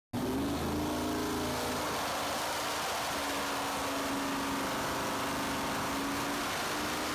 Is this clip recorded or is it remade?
recorded